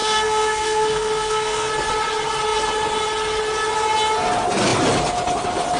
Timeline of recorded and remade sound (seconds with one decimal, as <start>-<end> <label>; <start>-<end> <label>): 0.0-1.7 remade; 1.7-5.8 recorded